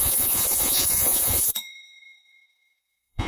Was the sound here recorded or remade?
remade